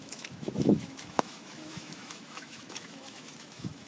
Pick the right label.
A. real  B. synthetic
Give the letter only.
B